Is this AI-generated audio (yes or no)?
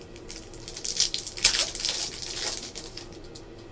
no